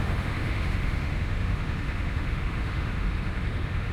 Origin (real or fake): fake